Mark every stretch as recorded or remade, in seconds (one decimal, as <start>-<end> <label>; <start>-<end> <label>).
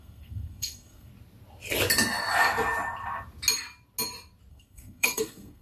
0.0-1.1 remade; 1.1-4.5 recorded; 4.5-5.6 remade